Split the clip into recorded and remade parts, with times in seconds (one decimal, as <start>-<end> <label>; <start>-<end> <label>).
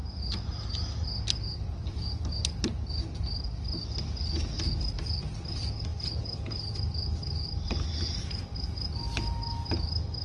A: 0.0-10.2 recorded